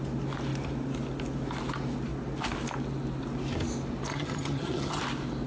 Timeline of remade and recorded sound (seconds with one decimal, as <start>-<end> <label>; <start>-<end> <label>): 0.0-4.1 recorded; 4.1-5.0 remade; 5.0-5.5 recorded